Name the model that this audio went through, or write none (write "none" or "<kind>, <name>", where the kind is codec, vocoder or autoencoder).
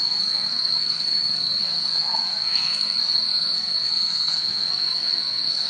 codec, SNAC